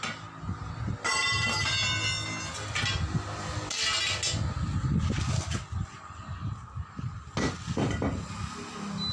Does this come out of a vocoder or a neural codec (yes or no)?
no